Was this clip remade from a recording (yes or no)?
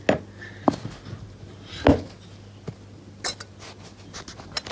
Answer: no